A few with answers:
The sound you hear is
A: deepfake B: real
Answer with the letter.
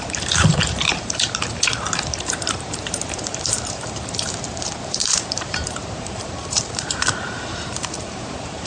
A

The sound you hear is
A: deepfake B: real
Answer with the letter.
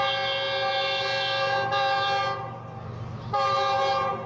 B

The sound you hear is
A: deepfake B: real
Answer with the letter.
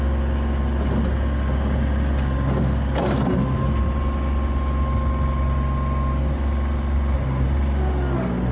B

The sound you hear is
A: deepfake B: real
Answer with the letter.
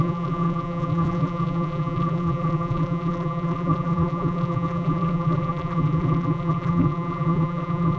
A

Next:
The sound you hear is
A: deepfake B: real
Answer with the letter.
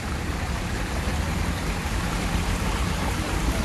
A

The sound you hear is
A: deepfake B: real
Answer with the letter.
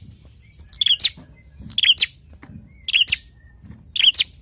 B